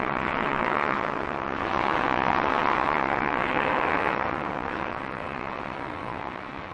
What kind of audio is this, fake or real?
fake